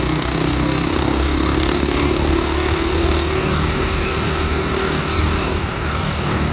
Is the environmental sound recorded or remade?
remade